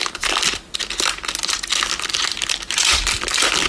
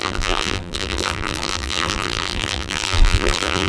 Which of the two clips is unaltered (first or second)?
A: first